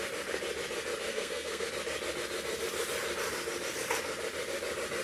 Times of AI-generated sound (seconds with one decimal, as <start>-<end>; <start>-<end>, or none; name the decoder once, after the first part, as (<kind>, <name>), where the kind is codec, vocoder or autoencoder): 1.1-1.7 (codec, SNAC)

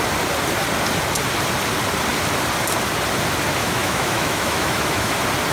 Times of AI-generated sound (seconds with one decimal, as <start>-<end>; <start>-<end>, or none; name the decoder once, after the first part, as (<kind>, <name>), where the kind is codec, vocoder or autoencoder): 3.6-5.1 (autoencoder, DAC-VAE)

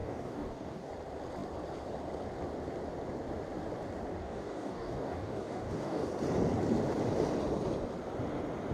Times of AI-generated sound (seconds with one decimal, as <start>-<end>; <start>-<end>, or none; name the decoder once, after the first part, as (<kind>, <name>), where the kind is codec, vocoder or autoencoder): 0.0-0.9 (codec, DAC); 4.1-6.1

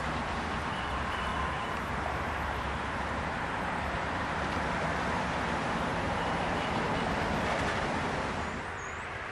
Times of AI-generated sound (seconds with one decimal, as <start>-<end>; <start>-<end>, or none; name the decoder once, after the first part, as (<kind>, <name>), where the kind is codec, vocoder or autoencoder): 1.3-4.6 (vocoder, BigVGAN v2)

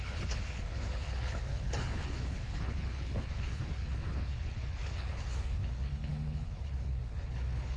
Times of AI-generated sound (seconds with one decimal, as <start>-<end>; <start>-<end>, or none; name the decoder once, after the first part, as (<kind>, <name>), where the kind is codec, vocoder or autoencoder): 0.0-7.8 (codec, HILCodec)

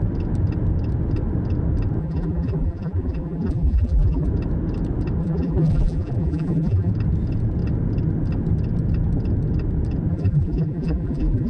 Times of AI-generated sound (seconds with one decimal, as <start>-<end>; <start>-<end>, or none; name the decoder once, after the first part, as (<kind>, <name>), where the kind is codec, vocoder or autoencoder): 2.0-4.3 (vocoder, BigVGAN v2); 5.2-6.9; 10.1-11.5

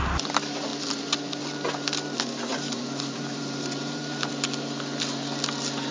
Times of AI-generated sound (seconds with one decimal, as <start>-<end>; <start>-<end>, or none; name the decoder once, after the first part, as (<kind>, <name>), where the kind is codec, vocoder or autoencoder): 2.5-4.3 (vocoder, BigVGAN v2)